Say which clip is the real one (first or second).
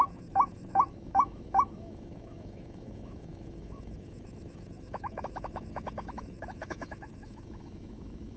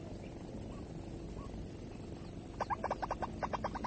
second